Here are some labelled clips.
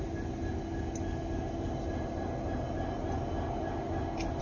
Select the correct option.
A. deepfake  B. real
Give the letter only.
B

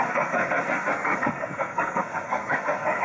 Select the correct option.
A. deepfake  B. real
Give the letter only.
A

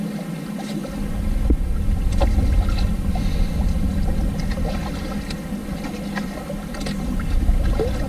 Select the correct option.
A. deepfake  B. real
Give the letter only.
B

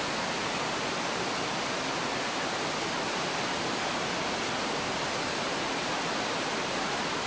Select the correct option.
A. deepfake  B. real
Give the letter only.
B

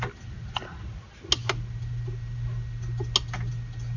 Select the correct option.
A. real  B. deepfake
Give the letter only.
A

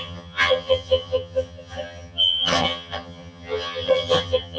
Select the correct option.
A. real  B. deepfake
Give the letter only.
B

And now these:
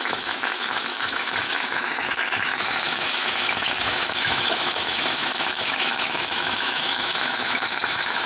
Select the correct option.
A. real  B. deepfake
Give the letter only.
B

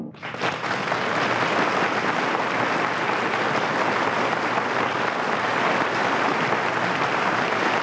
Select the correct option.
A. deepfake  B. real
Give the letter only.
B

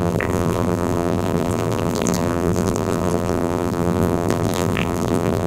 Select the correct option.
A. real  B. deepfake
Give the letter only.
B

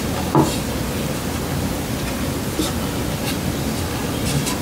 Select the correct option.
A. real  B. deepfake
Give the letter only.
A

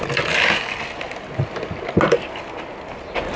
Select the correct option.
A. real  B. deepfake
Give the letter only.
A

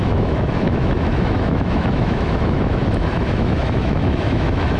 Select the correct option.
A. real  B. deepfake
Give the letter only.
B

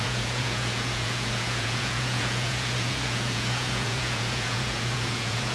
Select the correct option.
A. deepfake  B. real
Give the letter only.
A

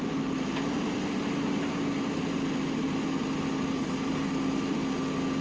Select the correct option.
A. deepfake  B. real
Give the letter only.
B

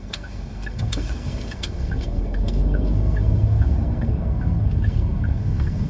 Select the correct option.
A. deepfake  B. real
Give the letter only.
A